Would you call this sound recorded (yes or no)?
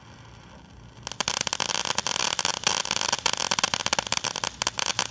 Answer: yes